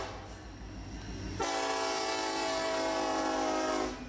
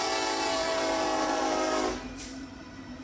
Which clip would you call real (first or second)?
first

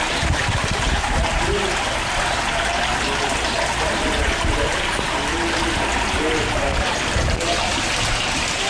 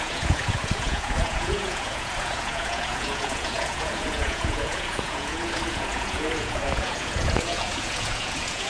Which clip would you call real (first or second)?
first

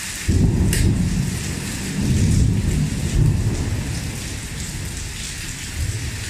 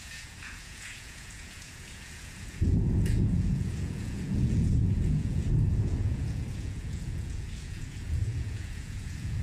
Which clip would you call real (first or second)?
first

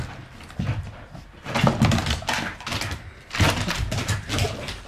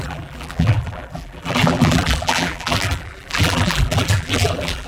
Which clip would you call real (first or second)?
first